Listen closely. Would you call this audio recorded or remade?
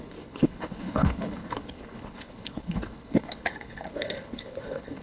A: remade